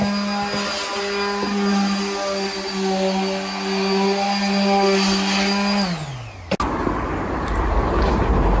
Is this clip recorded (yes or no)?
yes